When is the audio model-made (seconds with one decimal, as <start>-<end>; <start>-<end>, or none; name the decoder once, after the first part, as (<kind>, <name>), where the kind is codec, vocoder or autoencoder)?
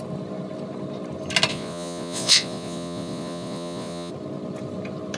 1.5-4.1 (vocoder, Vocos)